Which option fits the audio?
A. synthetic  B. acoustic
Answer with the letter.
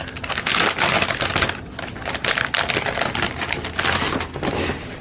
B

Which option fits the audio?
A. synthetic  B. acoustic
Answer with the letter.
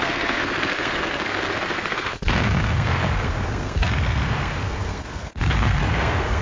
A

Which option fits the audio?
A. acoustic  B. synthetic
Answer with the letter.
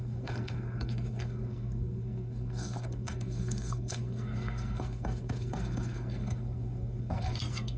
B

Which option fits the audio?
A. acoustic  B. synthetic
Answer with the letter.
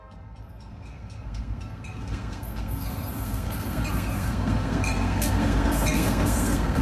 B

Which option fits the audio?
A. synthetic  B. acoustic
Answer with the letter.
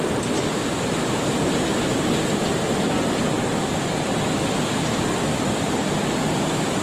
B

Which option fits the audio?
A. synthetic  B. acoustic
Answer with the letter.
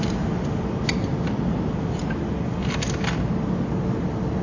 B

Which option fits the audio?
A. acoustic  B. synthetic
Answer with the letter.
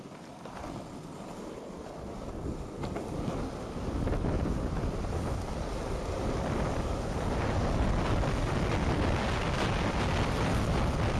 A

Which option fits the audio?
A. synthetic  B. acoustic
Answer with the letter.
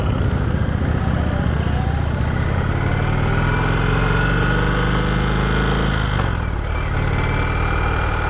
B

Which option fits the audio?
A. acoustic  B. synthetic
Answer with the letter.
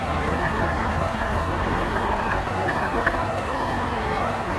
B